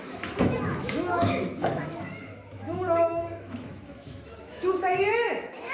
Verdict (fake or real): fake